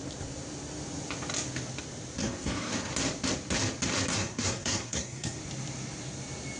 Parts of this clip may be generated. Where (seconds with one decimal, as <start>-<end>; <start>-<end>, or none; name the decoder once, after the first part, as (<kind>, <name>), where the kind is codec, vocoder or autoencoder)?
2.2-2.9 (codec, SNAC); 4.1-5.4